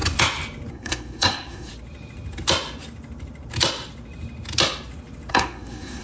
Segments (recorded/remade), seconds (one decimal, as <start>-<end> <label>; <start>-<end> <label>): 0.0-0.7 recorded; 0.7-1.7 remade; 1.7-5.3 recorded; 5.3-6.0 remade